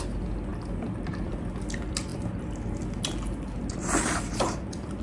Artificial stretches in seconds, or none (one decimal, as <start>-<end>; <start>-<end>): none